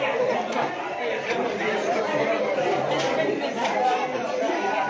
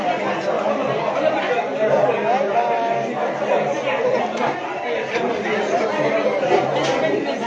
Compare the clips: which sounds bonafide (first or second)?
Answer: second